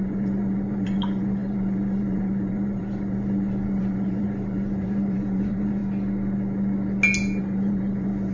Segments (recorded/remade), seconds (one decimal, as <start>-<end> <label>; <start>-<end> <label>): 0.0-5.8 remade; 5.8-7.4 recorded; 7.4-8.3 remade